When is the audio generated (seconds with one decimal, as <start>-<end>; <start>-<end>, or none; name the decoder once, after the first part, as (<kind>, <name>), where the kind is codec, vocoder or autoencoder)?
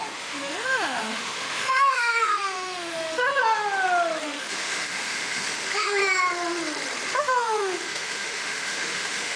0.0-3.4 (autoencoder, DAC-VAE); 4.2-6.0; 7.2-9.4